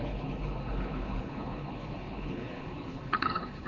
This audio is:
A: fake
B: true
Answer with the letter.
A